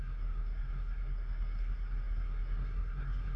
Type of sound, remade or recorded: remade